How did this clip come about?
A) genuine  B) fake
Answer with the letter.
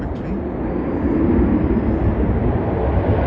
A